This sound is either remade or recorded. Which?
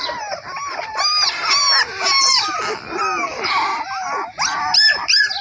recorded